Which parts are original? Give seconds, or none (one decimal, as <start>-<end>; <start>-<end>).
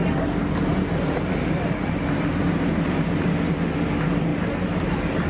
3.2-4.3